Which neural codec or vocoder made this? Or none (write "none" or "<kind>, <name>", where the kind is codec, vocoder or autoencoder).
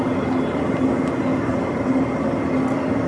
none